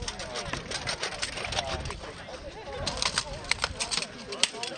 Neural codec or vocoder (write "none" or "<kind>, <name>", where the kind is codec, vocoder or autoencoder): vocoder, BigVGAN v2